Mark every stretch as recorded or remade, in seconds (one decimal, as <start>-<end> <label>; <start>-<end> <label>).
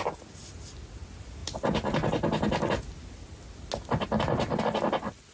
0.0-5.3 recorded